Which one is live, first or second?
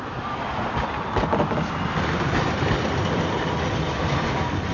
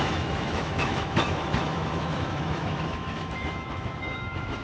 first